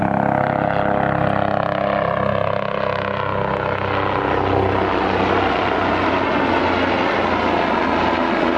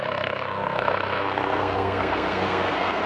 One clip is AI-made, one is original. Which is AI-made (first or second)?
second